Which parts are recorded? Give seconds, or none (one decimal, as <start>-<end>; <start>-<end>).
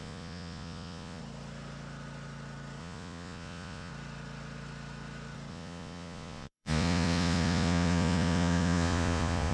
1.2-2.8; 3.9-5.5